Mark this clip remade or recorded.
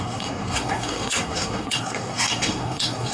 remade